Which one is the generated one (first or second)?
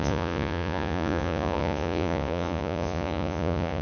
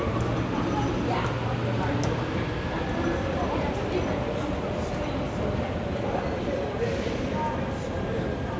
first